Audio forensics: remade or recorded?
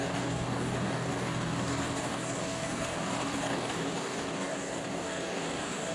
remade